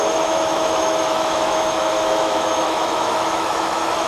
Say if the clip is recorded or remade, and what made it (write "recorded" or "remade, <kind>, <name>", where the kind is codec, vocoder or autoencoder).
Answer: remade, autoencoder, DAC-VAE